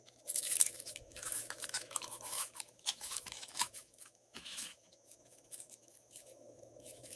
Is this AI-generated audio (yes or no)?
yes